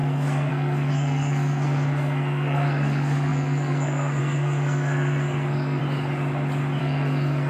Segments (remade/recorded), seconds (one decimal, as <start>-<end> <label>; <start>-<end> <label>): 0.0-5.8 remade; 5.8-6.8 recorded; 6.8-7.5 remade